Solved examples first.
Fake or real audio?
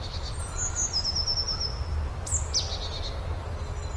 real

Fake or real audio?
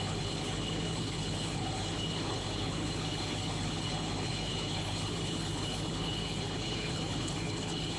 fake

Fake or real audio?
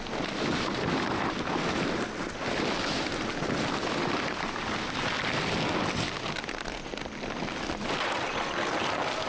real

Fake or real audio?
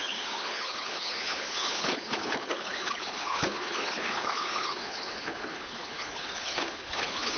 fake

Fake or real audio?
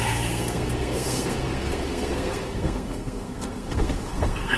fake